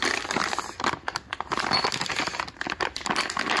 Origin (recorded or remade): recorded